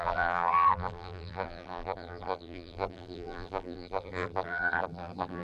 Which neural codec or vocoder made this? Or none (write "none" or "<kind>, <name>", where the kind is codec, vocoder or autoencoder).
vocoder, BigVGAN v2